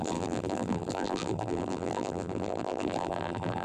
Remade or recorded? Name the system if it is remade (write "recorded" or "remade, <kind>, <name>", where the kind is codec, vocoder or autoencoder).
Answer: remade, vocoder, BigVGAN v2